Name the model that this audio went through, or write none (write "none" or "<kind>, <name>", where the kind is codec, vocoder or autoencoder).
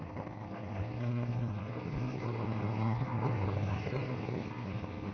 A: codec, SNAC